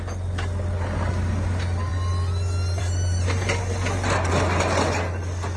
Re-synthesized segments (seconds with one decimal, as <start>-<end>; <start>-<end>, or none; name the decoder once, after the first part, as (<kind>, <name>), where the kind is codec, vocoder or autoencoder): none